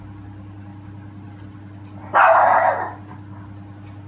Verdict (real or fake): real